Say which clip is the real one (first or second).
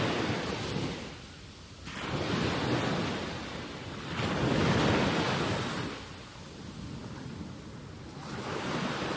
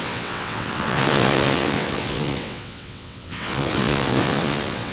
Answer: first